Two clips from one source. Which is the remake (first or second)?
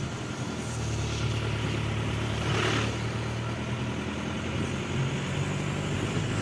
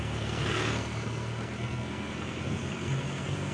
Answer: second